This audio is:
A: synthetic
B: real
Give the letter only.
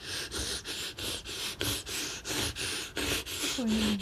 B